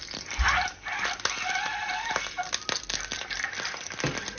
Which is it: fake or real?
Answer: real